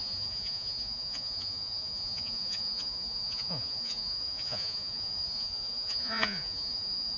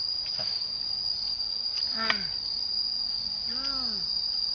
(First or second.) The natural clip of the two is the second